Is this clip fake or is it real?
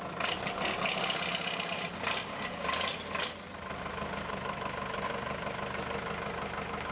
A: real